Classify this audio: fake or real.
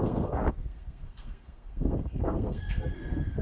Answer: fake